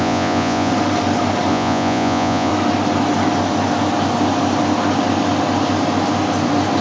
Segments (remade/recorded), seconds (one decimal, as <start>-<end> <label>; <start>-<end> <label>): 0.0-0.7 remade; 0.7-1.5 recorded; 1.5-2.5 remade; 2.5-6.8 recorded